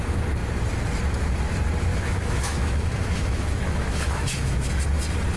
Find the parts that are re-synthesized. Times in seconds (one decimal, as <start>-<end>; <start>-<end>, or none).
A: 1.9-4.7